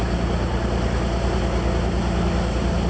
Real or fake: real